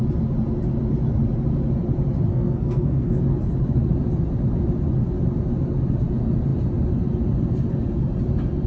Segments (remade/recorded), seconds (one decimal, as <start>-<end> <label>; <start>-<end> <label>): 0.0-2.3 recorded; 2.3-3.2 remade; 3.2-8.7 recorded